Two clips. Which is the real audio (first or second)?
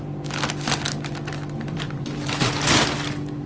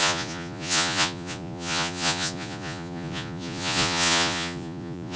first